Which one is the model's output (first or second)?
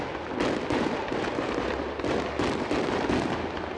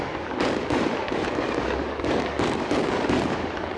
second